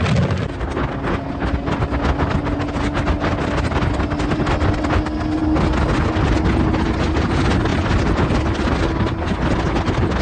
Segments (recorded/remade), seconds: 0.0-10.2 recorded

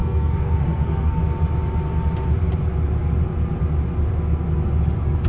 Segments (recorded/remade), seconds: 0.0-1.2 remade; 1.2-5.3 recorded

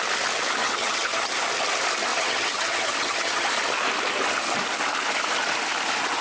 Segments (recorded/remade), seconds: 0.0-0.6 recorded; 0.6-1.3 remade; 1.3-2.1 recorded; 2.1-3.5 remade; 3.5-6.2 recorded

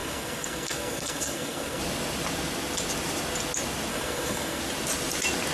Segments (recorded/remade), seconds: 0.0-1.8 remade; 1.8-3.9 recorded; 3.9-4.6 remade; 4.6-5.5 recorded

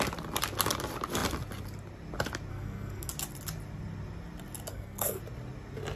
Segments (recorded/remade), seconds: 0.0-2.5 recorded; 2.5-3.1 remade; 3.1-4.7 recorded; 4.7-5.2 remade; 5.2-6.0 recorded